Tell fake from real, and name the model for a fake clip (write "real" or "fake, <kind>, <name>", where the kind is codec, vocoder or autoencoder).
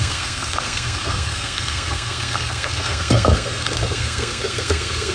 fake, codec, SNAC